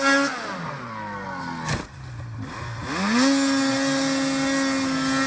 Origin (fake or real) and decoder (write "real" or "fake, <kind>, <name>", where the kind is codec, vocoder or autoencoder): real